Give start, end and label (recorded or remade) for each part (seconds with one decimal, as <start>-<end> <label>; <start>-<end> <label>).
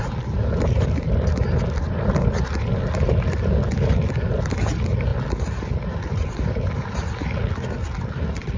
0.0-8.6 recorded